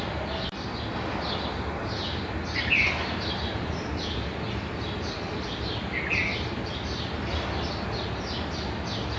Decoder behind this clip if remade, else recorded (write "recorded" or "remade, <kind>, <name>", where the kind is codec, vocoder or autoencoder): recorded